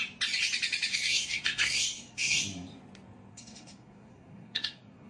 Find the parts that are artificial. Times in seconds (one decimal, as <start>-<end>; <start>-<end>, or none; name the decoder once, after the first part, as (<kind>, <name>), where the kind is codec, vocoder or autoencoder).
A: 0.9-2.4 (codec, SNAC); 3.3-5.1